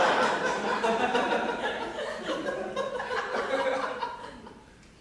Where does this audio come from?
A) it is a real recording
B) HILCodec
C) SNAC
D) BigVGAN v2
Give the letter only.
D